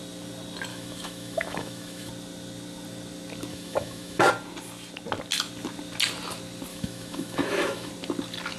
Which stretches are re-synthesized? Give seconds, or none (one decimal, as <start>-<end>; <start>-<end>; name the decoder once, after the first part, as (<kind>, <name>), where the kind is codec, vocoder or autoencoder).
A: 0.7-2.1 (autoencoder, DAC-VAE); 3.5-4.3; 6.7-7.9